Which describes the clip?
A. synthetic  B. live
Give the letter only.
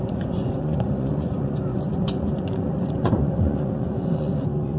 A